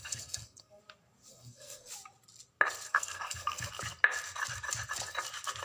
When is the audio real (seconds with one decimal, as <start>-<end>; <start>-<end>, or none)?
0.8-1.3; 1.9-2.9; 3.7-5.6